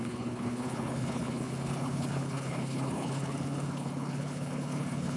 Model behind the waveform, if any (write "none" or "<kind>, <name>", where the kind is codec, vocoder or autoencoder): codec, HILCodec